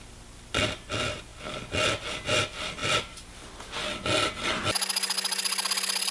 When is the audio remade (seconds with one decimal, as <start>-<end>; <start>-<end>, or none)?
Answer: none